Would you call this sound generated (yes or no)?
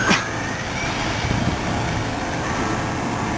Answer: no